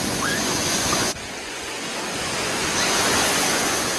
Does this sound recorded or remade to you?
remade